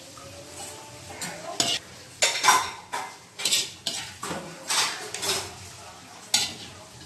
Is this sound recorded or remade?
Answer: recorded